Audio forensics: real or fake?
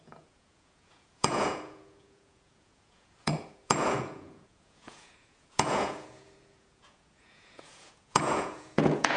fake